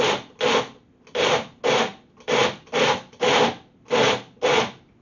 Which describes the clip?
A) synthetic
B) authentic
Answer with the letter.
B